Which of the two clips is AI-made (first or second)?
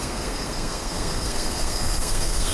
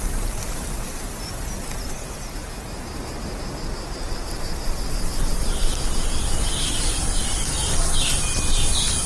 first